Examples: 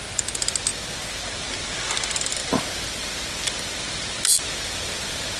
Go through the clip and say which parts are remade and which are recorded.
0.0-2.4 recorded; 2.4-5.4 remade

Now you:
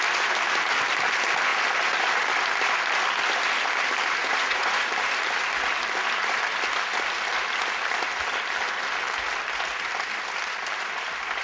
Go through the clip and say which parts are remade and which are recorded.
0.0-4.2 recorded; 4.2-4.9 remade; 4.9-11.4 recorded